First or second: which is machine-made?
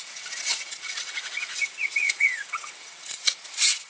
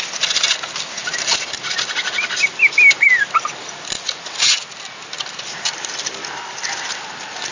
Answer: first